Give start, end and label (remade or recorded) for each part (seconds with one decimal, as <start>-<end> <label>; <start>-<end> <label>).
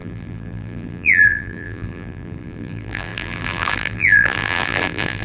0.0-5.2 remade